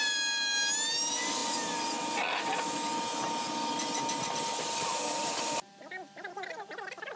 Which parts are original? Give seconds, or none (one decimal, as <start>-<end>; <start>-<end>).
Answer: 0.0-7.2